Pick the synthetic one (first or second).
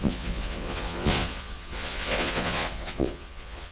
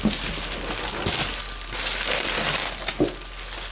first